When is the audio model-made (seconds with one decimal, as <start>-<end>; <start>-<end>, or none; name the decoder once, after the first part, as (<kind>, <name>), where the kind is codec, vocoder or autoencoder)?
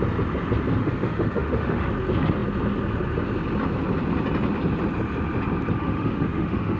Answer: 0.8-1.9 (autoencoder, DAC-VAE); 5.8-6.8